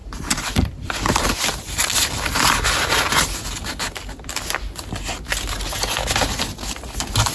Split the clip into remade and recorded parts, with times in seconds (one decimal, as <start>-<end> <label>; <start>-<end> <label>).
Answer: 0.0-1.3 remade; 1.3-7.3 recorded

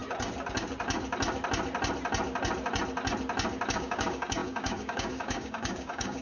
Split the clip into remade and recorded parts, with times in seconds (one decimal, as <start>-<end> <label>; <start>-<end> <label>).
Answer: 0.0-3.7 recorded; 3.7-6.2 remade

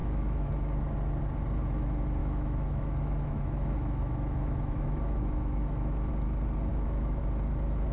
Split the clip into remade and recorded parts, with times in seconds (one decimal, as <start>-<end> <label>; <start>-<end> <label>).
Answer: 0.0-0.5 remade; 0.5-2.2 recorded; 2.2-6.1 remade; 6.1-6.7 recorded; 6.7-7.2 remade; 7.2-7.9 recorded

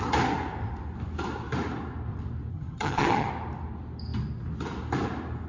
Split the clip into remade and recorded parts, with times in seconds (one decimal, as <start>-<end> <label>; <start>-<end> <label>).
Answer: 0.0-2.5 recorded; 2.5-3.3 remade; 3.3-5.5 recorded

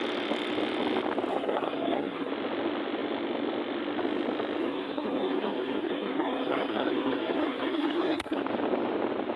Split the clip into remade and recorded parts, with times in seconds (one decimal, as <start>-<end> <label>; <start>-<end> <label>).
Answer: 0.0-1.3 recorded; 1.3-2.3 remade; 2.3-4.6 recorded; 4.6-8.4 remade; 8.4-9.4 recorded

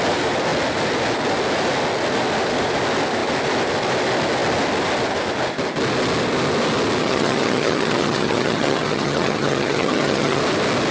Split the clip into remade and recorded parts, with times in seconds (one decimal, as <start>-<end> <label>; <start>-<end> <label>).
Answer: 0.0-7.0 recorded; 7.0-10.4 remade; 10.4-10.9 recorded

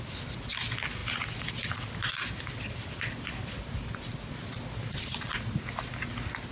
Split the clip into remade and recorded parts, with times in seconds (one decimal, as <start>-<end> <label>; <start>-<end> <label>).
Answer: 0.0-6.5 recorded